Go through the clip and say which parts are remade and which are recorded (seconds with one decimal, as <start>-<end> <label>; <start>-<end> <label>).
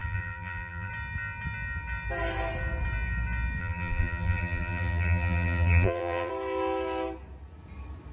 0.0-0.9 remade; 0.9-3.6 recorded; 3.6-6.3 remade; 6.3-8.1 recorded